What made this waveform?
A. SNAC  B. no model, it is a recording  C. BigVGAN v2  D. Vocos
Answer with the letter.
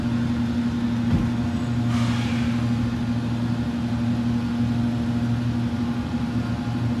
B